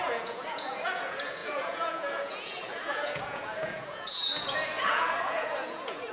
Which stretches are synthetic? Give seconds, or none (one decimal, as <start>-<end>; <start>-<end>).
0.0-6.1